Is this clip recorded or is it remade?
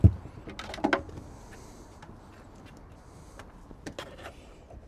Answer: recorded